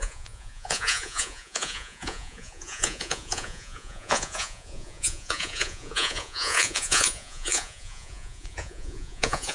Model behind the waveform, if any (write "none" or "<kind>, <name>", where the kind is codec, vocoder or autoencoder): vocoder, Vocos